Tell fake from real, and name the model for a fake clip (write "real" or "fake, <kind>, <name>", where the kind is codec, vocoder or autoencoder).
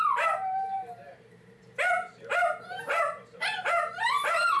fake, vocoder, BigVGAN v2